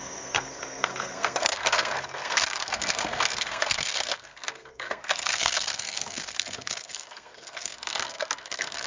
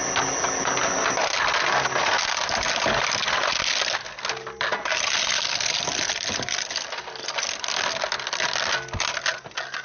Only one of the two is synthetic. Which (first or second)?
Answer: first